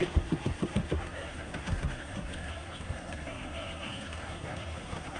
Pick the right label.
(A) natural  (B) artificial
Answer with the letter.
B